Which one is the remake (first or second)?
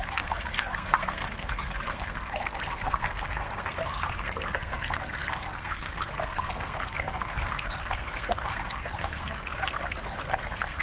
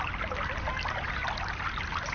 first